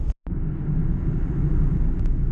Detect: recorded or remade recorded